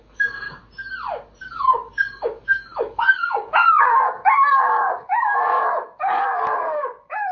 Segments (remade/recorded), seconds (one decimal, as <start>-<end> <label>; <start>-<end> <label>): 0.0-0.6 remade; 0.6-1.4 recorded; 1.4-7.3 remade